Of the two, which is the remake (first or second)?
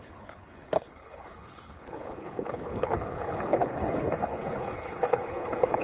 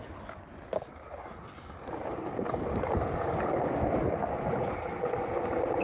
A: first